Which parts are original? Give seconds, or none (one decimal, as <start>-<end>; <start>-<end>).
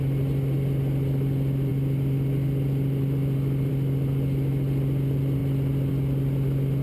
0.0-6.8